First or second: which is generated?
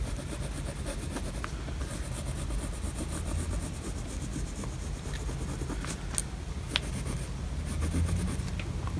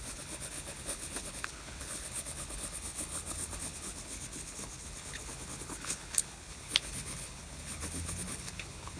second